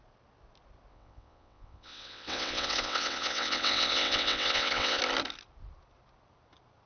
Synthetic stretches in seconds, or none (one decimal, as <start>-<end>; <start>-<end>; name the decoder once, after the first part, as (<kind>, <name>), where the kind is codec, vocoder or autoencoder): 0.9-5.0 (vocoder, WaveNeXt)

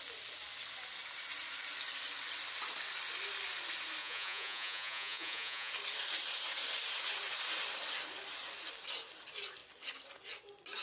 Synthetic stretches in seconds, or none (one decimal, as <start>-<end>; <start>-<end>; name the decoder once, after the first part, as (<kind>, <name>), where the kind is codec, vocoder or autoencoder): 4.0-5.7 (vocoder, Vocos)